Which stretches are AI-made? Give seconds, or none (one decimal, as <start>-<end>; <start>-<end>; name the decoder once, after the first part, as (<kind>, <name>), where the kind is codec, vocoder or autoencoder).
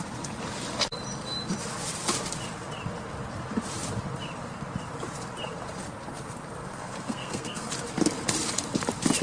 6.6-7.7 (codec, SNAC)